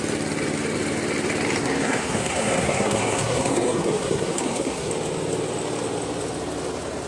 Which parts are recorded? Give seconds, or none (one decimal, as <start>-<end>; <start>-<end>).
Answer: 0.0-1.6; 4.9-7.1